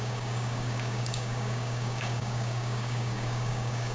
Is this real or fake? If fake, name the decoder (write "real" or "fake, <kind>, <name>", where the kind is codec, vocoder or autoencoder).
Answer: fake, codec, DAC